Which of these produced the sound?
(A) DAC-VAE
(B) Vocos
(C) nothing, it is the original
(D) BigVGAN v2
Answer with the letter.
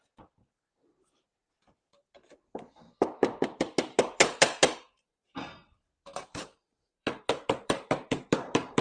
D